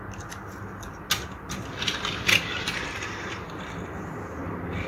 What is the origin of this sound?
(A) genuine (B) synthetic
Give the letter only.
A